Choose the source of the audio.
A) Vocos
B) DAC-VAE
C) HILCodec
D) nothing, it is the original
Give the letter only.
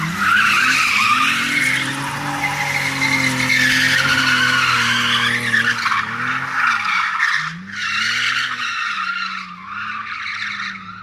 D